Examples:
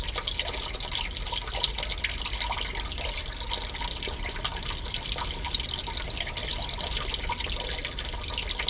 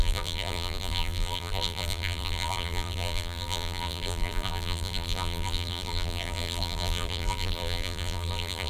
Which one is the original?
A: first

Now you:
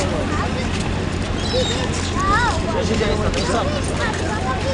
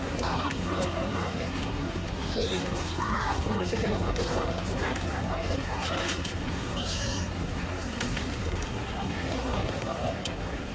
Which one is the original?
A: first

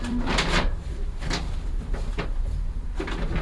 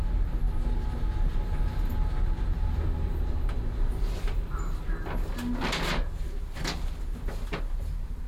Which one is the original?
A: second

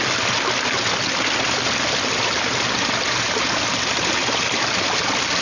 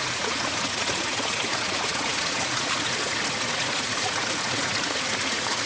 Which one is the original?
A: first